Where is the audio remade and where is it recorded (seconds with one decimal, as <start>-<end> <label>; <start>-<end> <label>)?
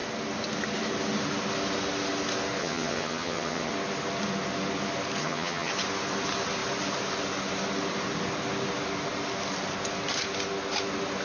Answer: 0.0-2.6 recorded; 2.6-3.7 remade; 3.7-5.2 recorded; 5.2-5.7 remade; 5.7-11.2 recorded